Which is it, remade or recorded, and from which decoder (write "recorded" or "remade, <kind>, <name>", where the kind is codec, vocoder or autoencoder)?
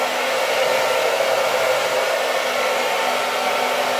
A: recorded